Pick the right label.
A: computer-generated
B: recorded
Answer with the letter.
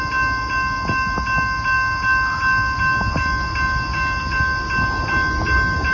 B